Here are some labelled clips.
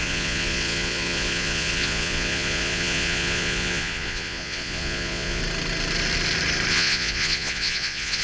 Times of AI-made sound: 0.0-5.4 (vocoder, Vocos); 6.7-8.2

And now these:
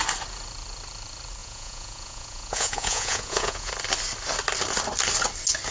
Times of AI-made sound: 1.4-3.7 (vocoder, Vocos)